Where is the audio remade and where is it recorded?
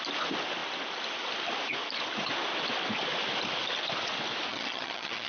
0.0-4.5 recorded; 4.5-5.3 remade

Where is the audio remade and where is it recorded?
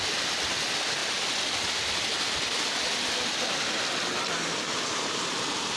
0.0-5.8 recorded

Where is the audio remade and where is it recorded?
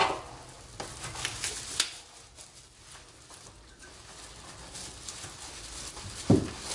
0.0-6.7 recorded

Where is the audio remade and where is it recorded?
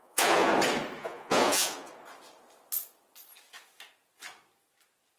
0.0-0.5 remade; 0.5-1.0 recorded; 1.0-1.9 remade; 1.9-5.2 recorded